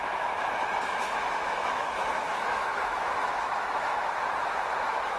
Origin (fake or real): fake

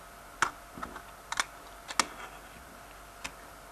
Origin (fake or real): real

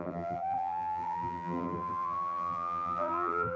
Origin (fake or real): fake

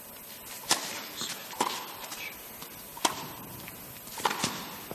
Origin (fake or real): real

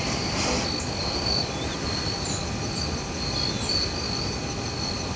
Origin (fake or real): real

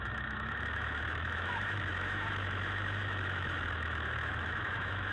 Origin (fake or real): fake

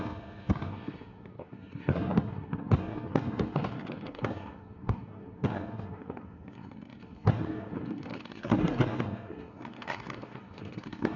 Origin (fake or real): fake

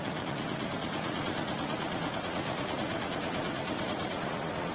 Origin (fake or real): fake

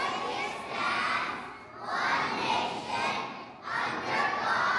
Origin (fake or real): real